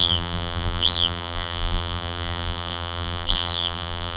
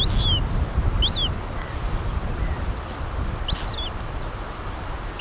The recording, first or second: second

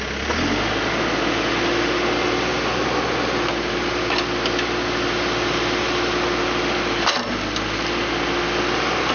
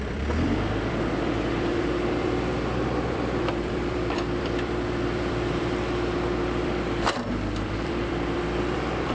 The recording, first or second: first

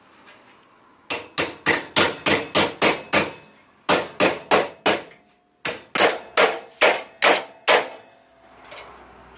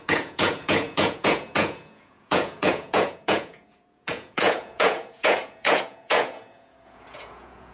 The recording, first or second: first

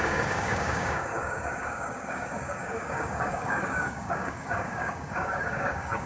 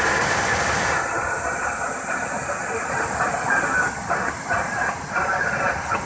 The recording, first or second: second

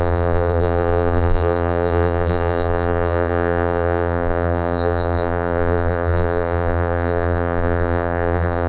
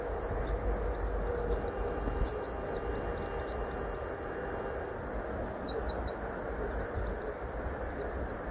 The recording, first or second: second